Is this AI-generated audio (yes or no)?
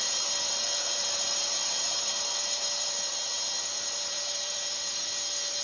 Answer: yes